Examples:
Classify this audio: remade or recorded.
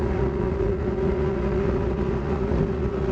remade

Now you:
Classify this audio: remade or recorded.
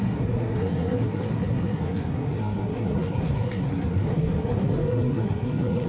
remade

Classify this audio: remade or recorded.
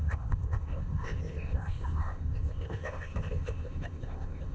remade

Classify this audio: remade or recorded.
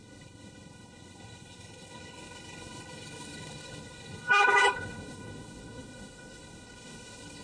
remade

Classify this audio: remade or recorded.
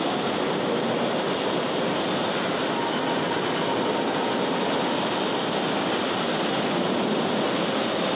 recorded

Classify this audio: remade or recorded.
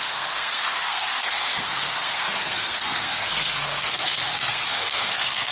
remade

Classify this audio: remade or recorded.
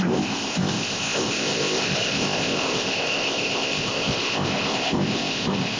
remade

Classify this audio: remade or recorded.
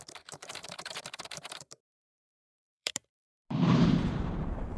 remade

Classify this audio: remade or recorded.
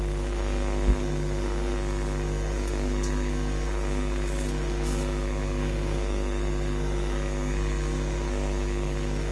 remade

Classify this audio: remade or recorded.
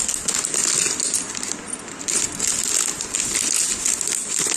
recorded